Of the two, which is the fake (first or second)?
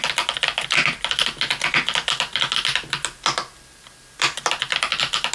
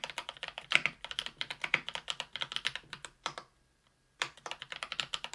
second